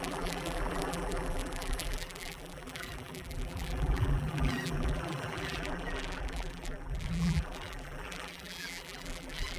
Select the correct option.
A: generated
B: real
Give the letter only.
A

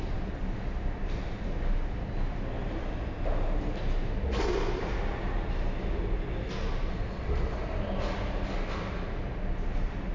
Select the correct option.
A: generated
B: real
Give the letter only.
B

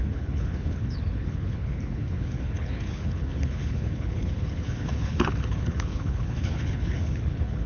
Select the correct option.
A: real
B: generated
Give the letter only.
B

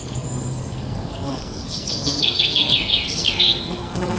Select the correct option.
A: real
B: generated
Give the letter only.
B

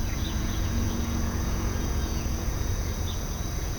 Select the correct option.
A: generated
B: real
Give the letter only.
A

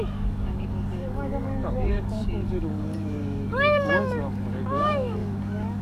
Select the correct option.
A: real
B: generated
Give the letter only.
B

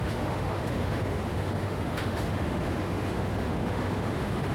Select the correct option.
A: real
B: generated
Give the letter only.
B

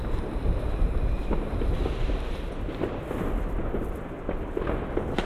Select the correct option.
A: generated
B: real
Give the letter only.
B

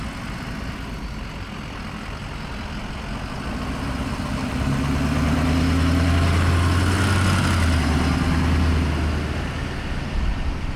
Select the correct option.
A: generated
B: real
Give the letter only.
B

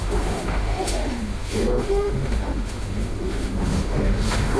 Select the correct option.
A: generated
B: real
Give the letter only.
A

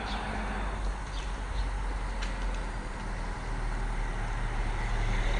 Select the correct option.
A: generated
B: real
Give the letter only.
B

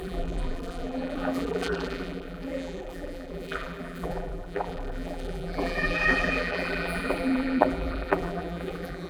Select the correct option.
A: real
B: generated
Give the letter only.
B